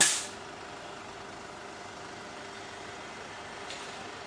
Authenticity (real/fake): real